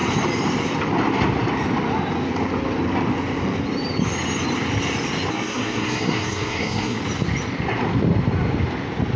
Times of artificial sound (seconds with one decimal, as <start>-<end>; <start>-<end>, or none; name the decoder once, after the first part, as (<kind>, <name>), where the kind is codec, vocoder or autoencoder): 5.3-7.0 (codec, SNAC)